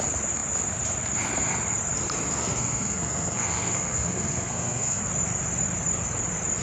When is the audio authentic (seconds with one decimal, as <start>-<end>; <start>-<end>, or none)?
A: 0.0-2.3; 5.0-6.6